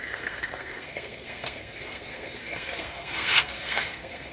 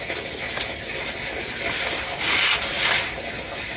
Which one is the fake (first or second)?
first